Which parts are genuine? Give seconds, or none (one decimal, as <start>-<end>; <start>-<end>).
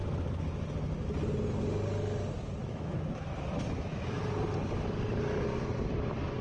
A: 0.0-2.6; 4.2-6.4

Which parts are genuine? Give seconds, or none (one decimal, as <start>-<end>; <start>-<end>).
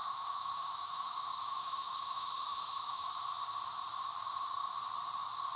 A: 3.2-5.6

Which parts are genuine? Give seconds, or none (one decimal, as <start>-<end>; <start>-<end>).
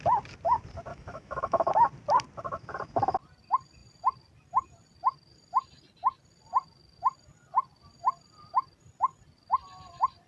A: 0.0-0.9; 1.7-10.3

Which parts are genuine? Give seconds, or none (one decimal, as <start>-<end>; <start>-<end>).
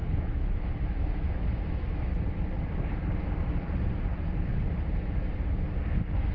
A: 2.1-6.3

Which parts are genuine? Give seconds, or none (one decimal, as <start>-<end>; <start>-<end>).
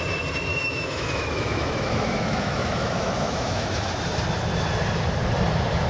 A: 0.0-0.5; 4.0-5.9